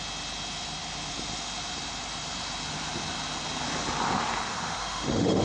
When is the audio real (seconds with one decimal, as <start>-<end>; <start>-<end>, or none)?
0.0-4.5

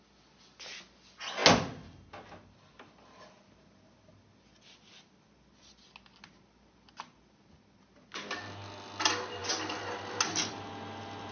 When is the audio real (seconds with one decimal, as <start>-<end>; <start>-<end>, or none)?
0.0-11.3

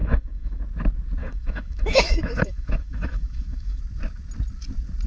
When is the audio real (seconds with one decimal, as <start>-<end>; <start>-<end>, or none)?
0.6-1.2; 3.8-5.1

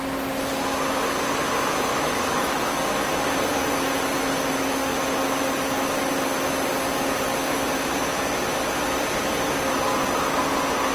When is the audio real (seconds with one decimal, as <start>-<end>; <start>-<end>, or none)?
0.0-1.9; 2.6-10.9

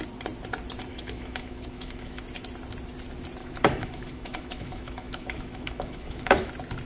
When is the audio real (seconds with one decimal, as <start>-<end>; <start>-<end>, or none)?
0.0-0.9; 2.2-3.4; 6.5-6.9